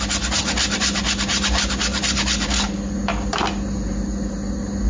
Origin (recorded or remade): recorded